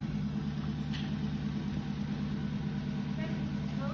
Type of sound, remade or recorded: recorded